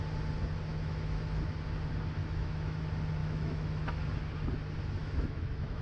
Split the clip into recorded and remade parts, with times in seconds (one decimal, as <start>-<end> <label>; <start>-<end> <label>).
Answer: 0.0-0.7 recorded; 0.7-1.4 remade; 1.4-2.2 recorded; 2.2-2.8 remade; 2.8-3.2 recorded; 3.2-4.0 remade; 4.0-5.0 recorded; 5.0-5.8 remade